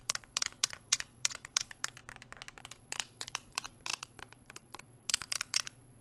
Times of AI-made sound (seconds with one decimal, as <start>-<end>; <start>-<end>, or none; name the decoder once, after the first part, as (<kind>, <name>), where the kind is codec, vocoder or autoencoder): 0.0-2.0 (vocoder, Vocos); 2.6-6.0